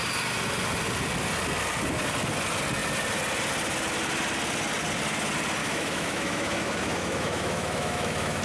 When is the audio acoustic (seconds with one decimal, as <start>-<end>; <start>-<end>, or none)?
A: 0.0-5.6